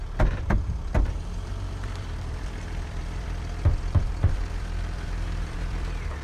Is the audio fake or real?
fake